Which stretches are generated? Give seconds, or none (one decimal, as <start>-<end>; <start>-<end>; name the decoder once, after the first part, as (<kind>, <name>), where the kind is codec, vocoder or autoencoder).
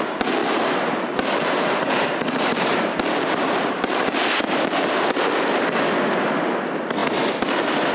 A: 0.4-4.4 (vocoder, BigVGAN v2)